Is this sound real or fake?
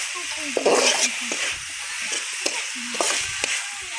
real